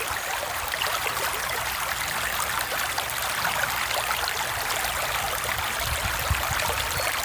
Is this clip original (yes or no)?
yes